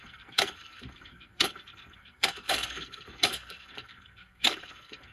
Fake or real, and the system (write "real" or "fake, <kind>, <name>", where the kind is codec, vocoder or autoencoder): fake, codec, SNAC